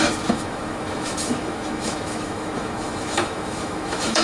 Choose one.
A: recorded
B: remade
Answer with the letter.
B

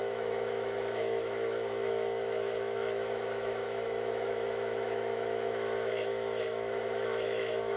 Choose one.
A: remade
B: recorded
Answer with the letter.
A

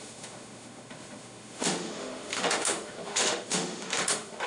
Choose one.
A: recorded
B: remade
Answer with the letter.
B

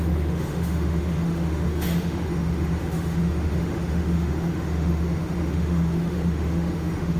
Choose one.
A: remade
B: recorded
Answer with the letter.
A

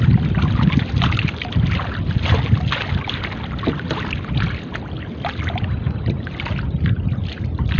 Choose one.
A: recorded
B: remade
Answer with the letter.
A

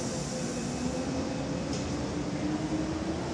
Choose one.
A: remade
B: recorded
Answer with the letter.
B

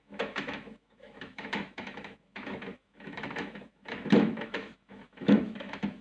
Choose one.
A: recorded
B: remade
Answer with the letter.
B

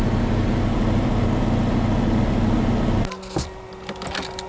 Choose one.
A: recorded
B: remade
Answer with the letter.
A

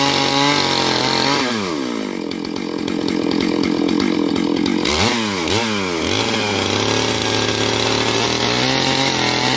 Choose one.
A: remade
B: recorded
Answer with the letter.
B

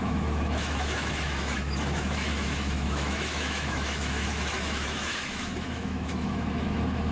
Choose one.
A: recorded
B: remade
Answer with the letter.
B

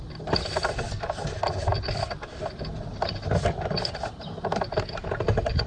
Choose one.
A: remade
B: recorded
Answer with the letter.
B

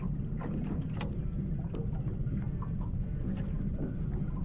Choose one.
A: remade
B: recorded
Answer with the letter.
B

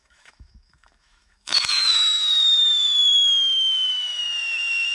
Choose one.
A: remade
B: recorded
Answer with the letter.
A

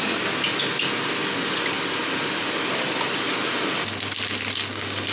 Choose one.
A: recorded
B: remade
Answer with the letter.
A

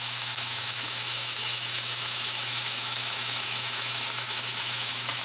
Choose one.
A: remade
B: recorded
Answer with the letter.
A